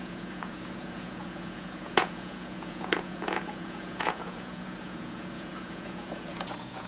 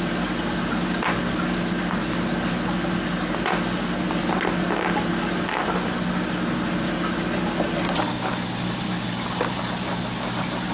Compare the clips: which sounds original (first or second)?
second